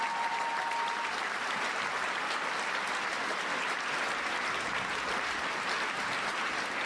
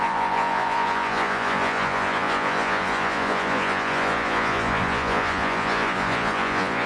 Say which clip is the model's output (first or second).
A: second